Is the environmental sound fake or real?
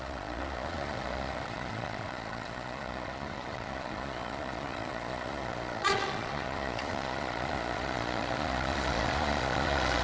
fake